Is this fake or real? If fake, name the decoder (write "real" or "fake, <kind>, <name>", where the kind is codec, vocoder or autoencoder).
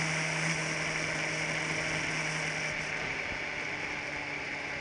real